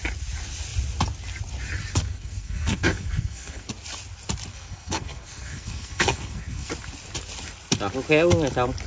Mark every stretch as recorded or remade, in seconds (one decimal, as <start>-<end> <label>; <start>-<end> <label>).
0.0-1.9 recorded; 1.9-3.7 remade; 3.7-4.5 recorded; 4.5-6.7 remade; 6.7-8.9 recorded